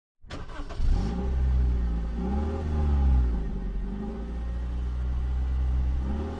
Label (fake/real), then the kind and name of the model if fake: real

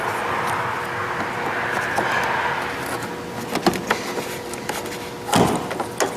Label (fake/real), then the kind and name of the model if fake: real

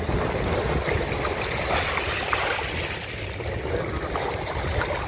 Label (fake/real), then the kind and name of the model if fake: real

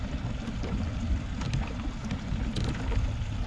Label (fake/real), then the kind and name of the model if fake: real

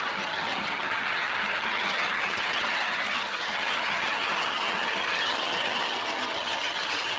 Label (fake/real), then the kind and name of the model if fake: fake, vocoder, HiFi-GAN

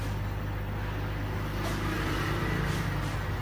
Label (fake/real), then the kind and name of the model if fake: real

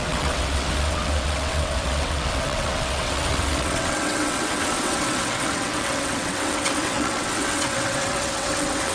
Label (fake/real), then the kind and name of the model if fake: fake, vocoder, WaveNeXt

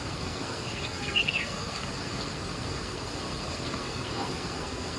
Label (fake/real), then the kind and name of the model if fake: fake, codec, SNAC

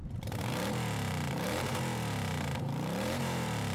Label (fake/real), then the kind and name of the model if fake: fake, vocoder, BigVGAN v2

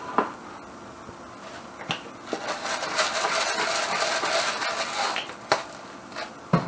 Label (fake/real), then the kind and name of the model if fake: real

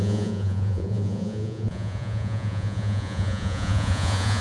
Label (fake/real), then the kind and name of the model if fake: fake, vocoder, Vocos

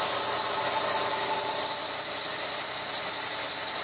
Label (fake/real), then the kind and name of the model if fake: real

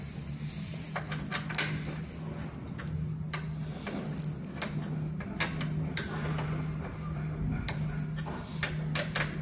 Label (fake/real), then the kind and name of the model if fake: real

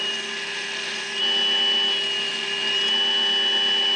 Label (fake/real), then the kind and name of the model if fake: real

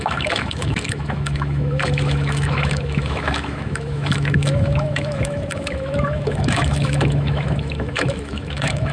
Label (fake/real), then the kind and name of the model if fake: fake, autoencoder, DAC-VAE